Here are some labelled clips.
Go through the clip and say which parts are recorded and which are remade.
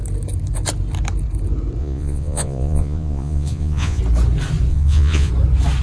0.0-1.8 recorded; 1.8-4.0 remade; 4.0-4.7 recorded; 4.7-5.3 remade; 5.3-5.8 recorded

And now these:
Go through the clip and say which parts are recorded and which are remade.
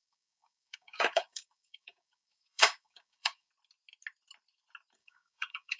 0.0-3.5 remade; 3.5-5.0 recorded; 5.0-5.8 remade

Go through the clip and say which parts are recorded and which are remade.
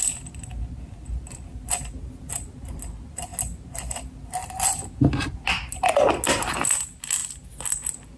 0.0-8.2 recorded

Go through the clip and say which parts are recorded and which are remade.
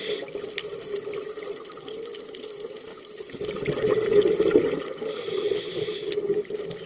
0.0-6.9 recorded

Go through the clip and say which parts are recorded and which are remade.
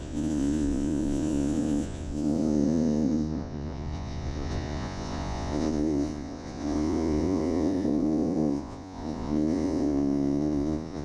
0.0-11.0 remade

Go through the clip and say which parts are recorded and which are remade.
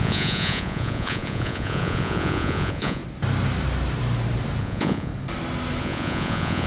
0.0-3.0 remade; 3.0-4.6 recorded; 4.6-5.1 remade; 5.1-5.8 recorded; 5.8-6.7 remade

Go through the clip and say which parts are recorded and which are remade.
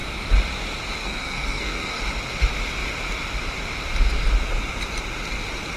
0.0-1.0 recorded; 1.0-2.0 remade; 2.0-5.8 recorded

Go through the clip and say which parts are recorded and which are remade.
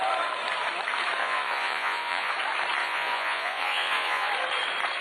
0.0-1.2 recorded; 1.2-2.3 remade; 2.3-2.8 recorded; 2.8-4.3 remade; 4.3-5.0 recorded